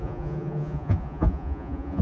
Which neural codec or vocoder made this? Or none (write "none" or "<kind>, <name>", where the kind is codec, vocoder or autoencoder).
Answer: vocoder, Vocos